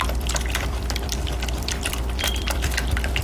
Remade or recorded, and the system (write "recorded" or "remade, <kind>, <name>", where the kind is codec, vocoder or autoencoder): remade, vocoder, BigVGAN v2